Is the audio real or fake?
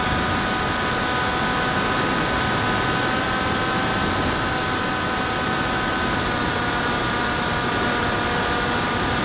real